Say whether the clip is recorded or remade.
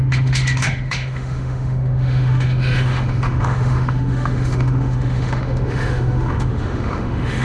remade